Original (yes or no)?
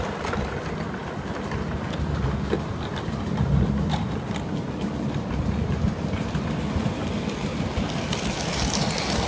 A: yes